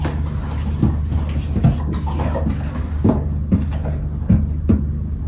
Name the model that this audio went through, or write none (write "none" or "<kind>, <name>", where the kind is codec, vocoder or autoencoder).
none